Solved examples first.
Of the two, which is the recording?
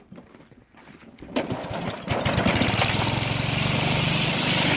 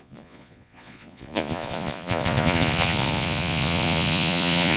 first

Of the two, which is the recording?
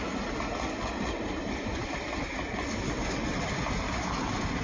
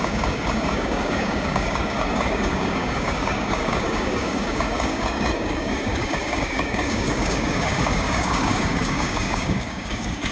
first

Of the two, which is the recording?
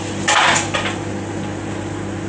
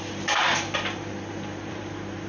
first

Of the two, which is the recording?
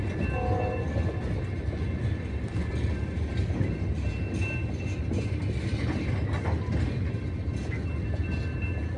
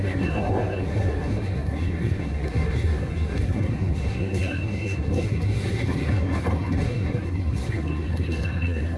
first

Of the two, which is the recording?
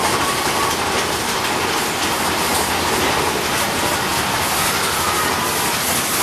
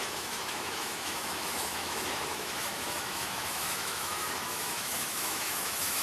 first